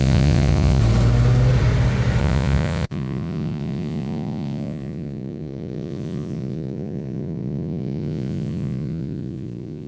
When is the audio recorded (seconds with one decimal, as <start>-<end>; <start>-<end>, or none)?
0.8-2.2